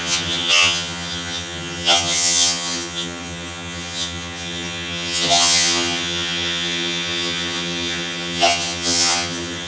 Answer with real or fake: fake